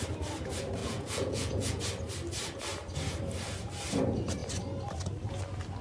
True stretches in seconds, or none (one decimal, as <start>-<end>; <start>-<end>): 0.0-0.8; 1.8-5.8